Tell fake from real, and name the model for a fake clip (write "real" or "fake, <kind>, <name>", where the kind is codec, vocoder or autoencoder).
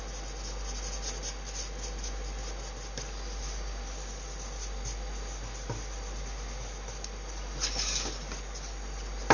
real